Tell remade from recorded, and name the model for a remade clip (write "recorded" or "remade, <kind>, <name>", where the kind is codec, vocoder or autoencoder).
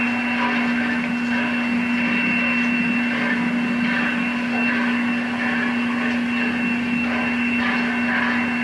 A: recorded